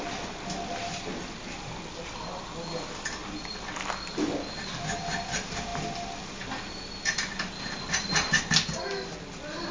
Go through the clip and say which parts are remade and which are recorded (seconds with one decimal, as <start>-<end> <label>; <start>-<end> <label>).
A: 0.0-9.7 recorded